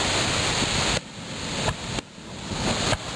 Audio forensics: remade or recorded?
recorded